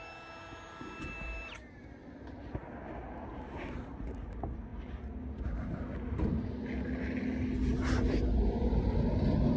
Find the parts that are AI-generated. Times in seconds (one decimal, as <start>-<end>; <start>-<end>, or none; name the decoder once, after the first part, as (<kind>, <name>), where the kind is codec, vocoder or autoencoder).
none